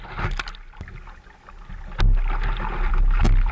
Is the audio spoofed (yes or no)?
no